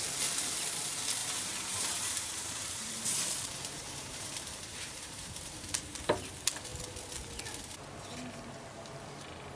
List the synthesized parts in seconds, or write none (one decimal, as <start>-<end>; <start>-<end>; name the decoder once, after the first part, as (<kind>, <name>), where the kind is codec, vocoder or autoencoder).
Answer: 1.2-6.3 (vocoder, BigVGAN v2)